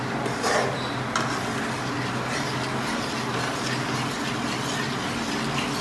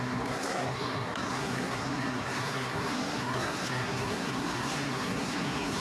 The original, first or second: first